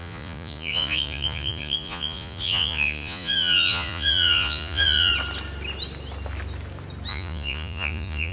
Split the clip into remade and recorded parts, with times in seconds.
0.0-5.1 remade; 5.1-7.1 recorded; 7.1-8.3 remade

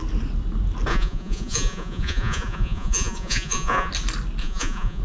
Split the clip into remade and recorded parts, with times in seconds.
0.0-0.9 recorded; 0.9-3.9 remade; 3.9-4.4 recorded; 4.4-5.0 remade

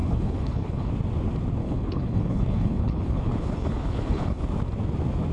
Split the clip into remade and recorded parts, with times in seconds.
0.0-0.9 remade; 0.9-1.6 recorded; 1.6-4.4 remade; 4.4-5.3 recorded

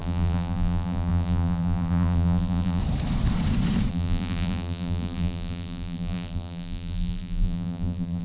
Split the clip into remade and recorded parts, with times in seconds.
0.0-2.8 remade; 2.8-3.9 recorded; 3.9-8.2 remade

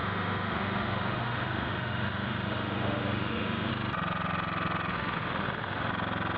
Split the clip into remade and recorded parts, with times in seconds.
0.0-3.7 remade; 3.7-4.9 recorded; 4.9-5.9 remade; 5.9-6.4 recorded

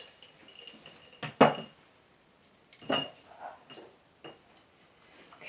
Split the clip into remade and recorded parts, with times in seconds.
0.0-5.5 recorded

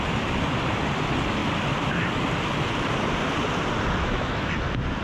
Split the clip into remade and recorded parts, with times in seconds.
0.0-4.0 recorded; 4.0-4.5 remade; 4.5-5.0 recorded

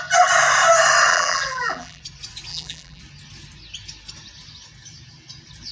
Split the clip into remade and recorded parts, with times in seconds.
0.0-1.1 recorded; 1.1-2.0 remade; 2.0-2.5 recorded; 2.5-3.0 remade; 3.0-5.7 recorded